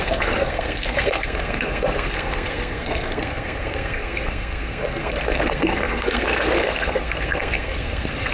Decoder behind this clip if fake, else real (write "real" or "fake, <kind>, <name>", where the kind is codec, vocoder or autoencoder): fake, codec, SNAC